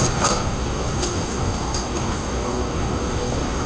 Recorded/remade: remade